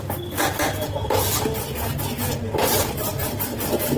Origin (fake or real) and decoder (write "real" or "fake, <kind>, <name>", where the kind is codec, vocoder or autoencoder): real